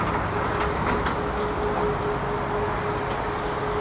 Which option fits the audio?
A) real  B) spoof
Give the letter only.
A